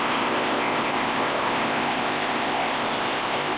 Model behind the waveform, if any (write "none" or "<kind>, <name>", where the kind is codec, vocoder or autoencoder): codec, ZipCodec